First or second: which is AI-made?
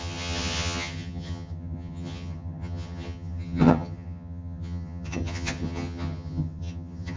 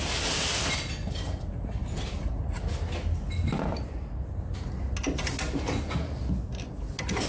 first